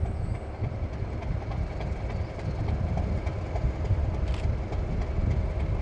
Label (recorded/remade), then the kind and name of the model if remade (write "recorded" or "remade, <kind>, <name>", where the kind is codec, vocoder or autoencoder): recorded